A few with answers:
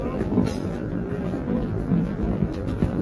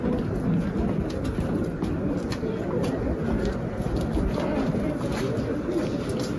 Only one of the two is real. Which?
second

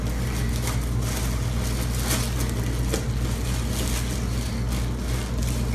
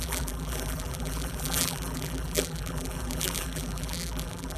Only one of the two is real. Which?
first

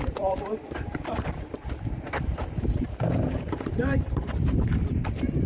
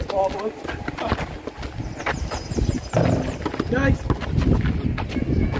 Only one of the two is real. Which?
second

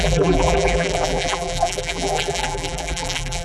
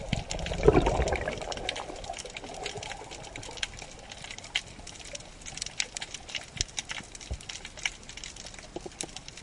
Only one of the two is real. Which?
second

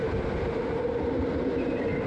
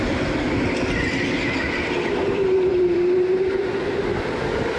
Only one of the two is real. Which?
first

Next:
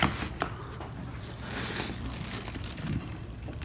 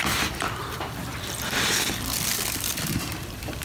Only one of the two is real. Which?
first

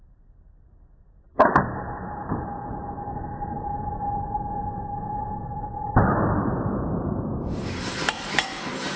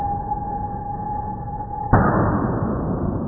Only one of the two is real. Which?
second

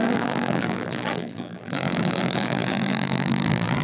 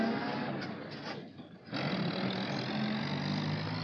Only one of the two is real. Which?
second